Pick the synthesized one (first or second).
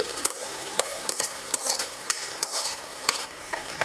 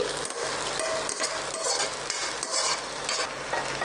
first